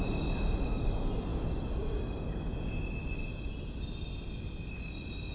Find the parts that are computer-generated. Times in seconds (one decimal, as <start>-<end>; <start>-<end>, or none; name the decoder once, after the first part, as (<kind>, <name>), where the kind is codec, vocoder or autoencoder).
1.3-2.2 (codec, DAC)